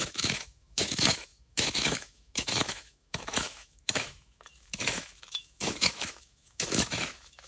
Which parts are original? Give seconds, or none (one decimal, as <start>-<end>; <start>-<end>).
none